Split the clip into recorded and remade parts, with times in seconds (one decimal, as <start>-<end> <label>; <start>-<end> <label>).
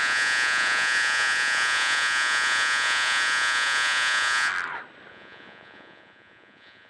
0.0-4.5 remade; 4.5-5.1 recorded; 5.1-6.9 remade